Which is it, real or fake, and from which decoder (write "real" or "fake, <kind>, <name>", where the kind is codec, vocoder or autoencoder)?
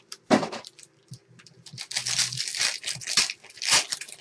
real